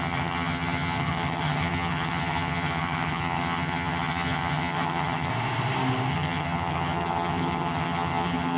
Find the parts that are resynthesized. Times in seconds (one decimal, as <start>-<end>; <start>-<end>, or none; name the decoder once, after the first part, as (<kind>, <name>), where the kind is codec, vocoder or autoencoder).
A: 0.0-5.3 (vocoder, HiFi-GAN); 6.1-8.6